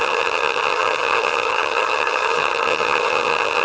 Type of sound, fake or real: fake